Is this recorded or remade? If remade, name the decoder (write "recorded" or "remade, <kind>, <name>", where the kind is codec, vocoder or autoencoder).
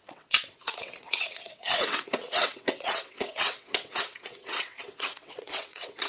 remade, vocoder, WaveNeXt